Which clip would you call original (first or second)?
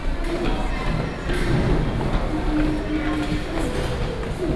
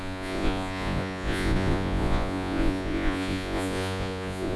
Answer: first